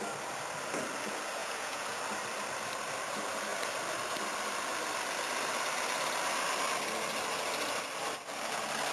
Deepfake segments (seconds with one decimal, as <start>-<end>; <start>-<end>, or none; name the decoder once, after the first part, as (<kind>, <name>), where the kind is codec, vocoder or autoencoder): 1.4-2.0 (vocoder, Vocos)